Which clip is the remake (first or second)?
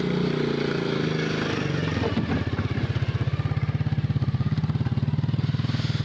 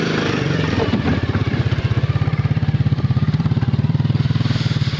second